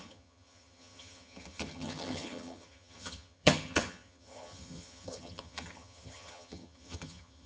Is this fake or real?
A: fake